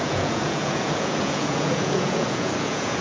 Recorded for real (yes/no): no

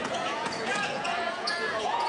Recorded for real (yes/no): no